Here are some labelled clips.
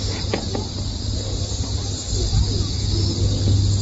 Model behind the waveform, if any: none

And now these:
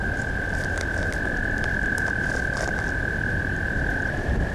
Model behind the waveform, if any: none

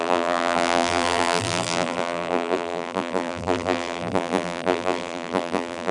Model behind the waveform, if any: vocoder, BigVGAN v2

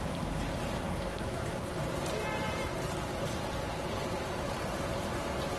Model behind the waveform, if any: vocoder, BigVGAN v2